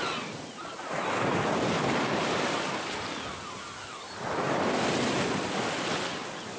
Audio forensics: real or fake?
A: real